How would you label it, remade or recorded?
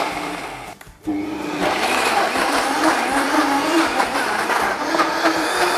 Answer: remade